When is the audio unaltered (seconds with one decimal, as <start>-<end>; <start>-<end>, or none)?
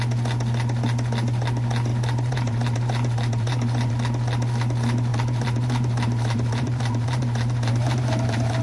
0.0-1.9; 3.9-5.1